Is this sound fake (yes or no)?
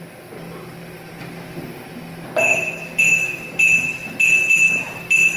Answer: no